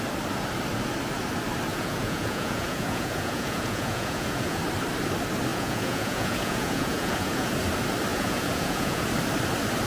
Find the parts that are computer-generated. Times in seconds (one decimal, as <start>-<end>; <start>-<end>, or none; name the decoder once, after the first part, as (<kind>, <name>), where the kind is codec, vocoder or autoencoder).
1.7-4.6 (vocoder, Vocos); 5.5-7.5; 8.1-9.1